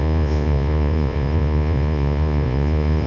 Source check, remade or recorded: remade